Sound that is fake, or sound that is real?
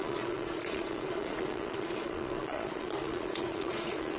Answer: fake